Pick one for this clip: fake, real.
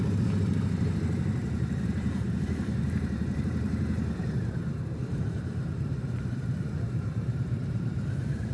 fake